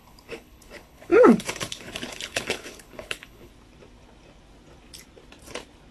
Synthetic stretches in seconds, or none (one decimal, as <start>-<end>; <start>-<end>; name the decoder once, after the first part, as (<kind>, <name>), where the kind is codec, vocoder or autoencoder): 0.0-3.5 (codec, HILCodec)